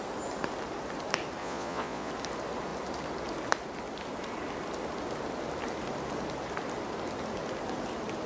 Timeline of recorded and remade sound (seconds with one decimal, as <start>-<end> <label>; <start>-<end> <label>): 0.0-1.4 recorded; 1.4-2.1 remade; 2.1-8.3 recorded